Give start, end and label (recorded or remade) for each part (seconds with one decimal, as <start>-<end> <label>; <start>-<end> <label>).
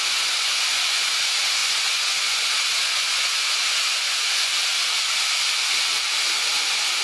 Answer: 0.0-4.5 remade; 4.5-6.3 recorded; 6.3-7.0 remade